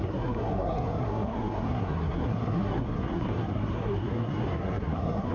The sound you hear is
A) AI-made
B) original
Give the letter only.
A